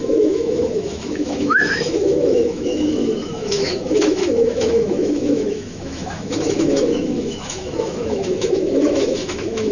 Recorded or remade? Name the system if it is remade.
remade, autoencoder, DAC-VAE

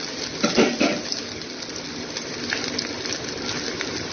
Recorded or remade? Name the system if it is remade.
recorded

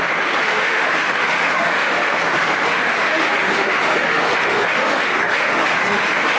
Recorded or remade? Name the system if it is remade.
remade, autoencoder, DAC-VAE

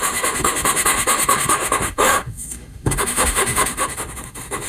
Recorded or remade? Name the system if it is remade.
remade, autoencoder, DAC-VAE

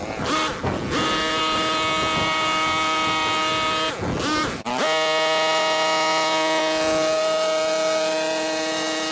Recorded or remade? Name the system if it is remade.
recorded